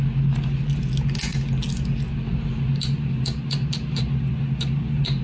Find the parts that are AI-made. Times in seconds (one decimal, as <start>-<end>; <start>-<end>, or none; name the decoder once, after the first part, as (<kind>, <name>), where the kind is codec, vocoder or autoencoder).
none